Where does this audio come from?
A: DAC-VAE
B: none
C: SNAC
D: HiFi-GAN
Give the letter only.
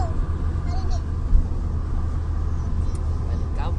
B